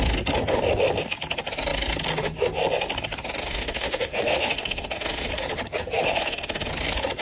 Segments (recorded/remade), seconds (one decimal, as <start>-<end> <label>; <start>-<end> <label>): 0.0-3.4 recorded; 3.4-5.3 remade; 5.3-6.1 recorded; 6.1-6.7 remade; 6.7-7.2 recorded